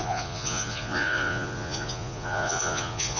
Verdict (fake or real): fake